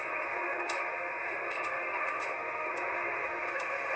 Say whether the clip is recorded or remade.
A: remade